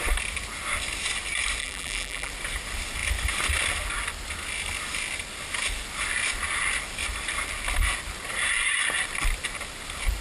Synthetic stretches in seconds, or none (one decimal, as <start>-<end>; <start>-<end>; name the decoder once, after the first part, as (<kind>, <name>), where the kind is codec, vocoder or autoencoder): 1.6-2.3 (vocoder, BigVGAN v2)